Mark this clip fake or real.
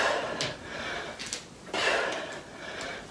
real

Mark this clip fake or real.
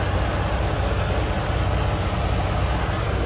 real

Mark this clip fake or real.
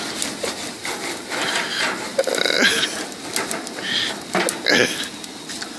real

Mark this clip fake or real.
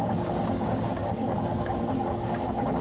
fake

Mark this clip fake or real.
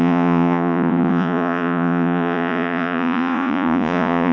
fake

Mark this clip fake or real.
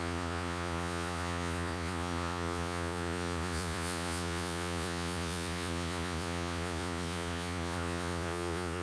fake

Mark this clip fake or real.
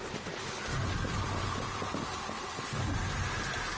real